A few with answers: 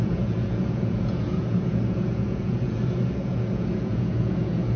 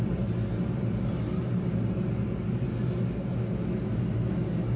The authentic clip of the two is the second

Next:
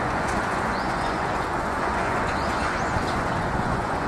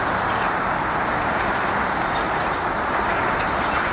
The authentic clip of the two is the second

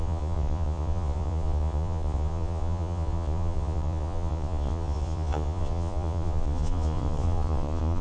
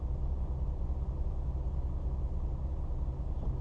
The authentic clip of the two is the second